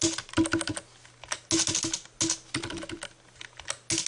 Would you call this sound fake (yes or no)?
no